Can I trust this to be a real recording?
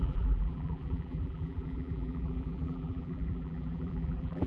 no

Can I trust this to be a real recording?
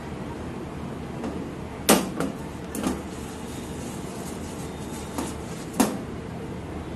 yes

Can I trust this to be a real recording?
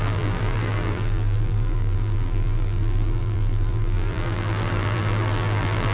no